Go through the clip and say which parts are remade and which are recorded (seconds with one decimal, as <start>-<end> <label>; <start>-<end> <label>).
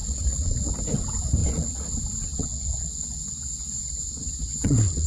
0.0-0.7 remade; 0.7-1.4 recorded; 1.4-1.9 remade; 1.9-2.3 recorded; 2.3-5.1 remade